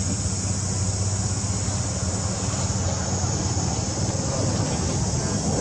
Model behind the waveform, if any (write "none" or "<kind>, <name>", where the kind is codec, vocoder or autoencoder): none